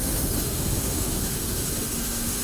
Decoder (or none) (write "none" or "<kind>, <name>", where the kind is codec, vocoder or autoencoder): autoencoder, DAC-VAE